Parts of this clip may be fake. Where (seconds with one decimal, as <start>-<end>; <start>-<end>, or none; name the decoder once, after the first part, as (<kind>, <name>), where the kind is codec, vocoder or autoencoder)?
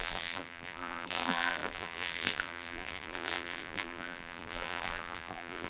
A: 0.0-5.7 (vocoder, BigVGAN v2)